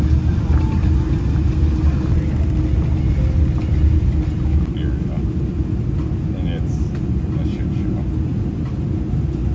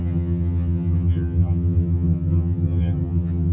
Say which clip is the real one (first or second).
first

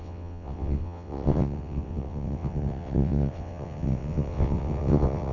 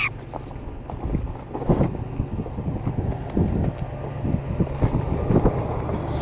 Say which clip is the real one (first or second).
second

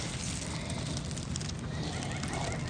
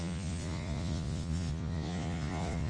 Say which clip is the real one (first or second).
first